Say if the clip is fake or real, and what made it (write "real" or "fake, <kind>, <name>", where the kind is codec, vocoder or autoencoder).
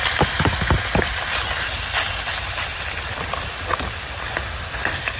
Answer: real